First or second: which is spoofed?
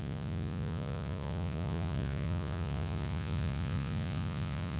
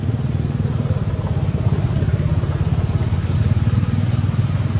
first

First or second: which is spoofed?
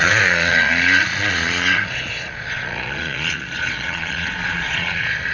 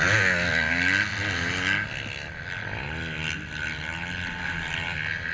first